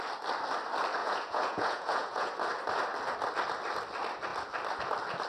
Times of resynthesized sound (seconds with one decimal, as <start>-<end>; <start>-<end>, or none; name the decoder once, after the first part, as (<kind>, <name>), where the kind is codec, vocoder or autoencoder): 1.0-2.3 (vocoder, Vocos)